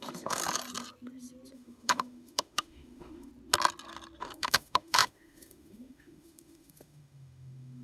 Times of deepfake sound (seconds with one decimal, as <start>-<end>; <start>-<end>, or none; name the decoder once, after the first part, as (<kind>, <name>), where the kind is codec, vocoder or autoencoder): 0.0-0.4 (autoencoder, DAC-VAE); 1.5-3.3; 4.2-7.8